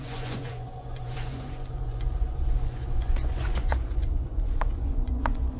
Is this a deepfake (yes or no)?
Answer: yes